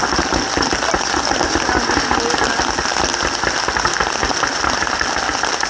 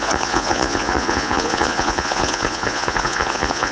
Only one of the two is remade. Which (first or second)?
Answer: second